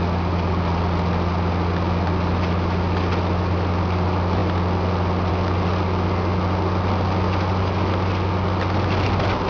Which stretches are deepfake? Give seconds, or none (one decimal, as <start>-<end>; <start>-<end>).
none